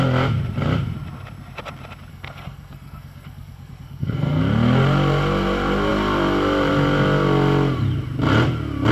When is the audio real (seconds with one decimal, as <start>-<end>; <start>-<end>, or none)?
0.0-2.1; 4.4-8.9